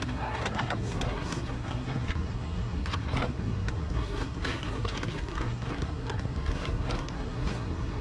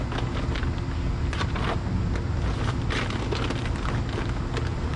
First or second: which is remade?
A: first